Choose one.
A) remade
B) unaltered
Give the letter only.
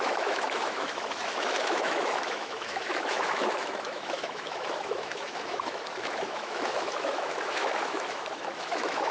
A